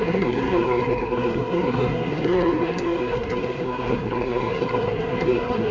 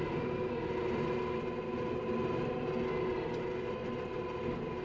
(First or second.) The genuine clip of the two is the second